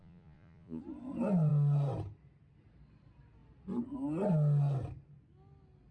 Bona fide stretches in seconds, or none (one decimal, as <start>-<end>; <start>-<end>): 0.8-5.9